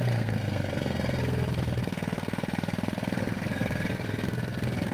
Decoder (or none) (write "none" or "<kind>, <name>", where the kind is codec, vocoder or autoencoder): codec, SNAC